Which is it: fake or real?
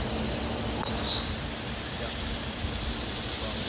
real